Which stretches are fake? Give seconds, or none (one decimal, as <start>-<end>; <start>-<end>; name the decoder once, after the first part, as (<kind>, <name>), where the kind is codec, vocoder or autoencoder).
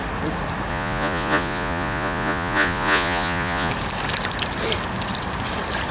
0.7-3.7 (vocoder, Vocos)